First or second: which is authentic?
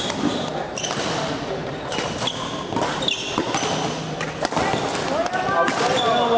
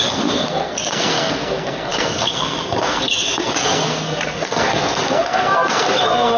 first